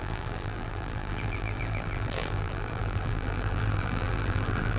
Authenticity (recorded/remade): remade